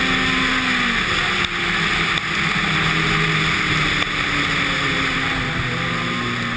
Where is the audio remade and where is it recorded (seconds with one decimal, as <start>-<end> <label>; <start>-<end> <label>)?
0.0-6.6 recorded